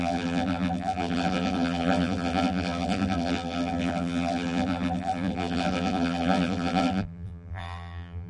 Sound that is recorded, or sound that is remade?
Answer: remade